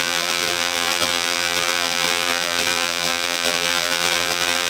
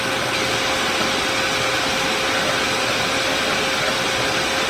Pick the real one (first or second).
second